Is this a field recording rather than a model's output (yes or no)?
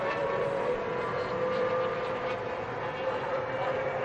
no